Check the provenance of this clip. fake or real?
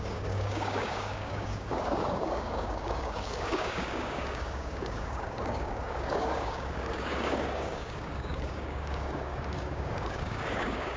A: fake